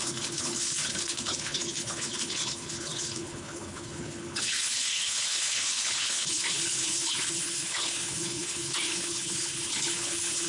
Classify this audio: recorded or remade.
remade